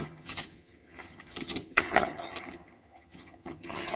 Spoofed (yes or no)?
yes